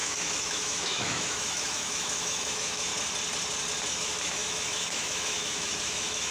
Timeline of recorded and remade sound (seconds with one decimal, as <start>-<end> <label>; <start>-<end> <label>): 0.0-2.9 remade; 2.9-3.9 recorded; 3.9-6.3 remade